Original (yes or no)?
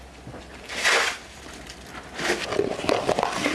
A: yes